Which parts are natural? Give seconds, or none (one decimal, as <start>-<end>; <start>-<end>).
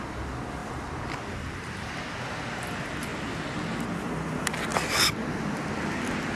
0.0-0.6; 1.9-3.1; 3.6-6.4